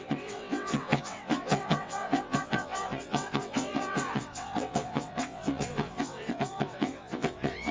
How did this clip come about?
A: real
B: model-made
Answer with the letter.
B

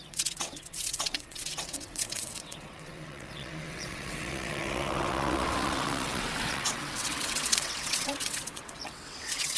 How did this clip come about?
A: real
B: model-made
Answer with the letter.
B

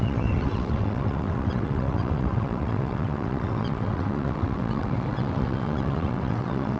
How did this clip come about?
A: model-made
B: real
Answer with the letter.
A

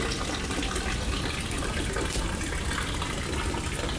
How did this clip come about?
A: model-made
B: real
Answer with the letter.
B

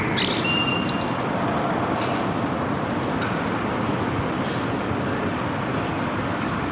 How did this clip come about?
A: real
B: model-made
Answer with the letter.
A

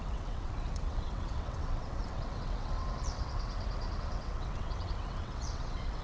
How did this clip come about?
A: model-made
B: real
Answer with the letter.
A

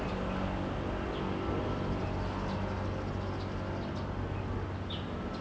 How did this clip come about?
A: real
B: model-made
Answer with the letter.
A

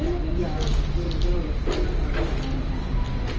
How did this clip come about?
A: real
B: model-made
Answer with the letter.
A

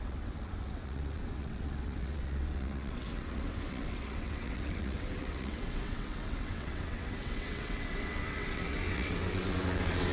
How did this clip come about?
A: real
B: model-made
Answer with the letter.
B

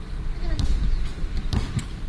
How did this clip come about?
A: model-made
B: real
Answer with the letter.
B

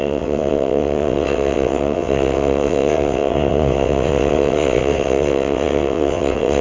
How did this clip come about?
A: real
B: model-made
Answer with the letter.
B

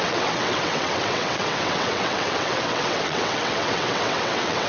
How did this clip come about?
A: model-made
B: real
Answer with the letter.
A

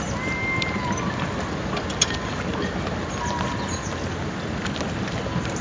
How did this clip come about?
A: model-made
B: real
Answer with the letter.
B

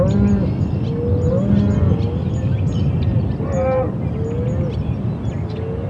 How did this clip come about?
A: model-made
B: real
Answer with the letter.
B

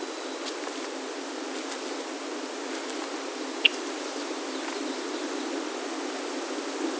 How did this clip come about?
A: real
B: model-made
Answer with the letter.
A